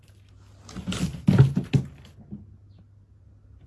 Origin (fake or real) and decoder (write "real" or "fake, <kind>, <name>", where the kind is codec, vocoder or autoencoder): real